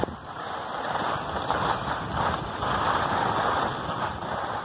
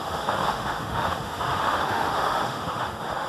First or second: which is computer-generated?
second